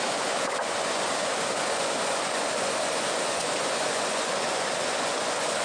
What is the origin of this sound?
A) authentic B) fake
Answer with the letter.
B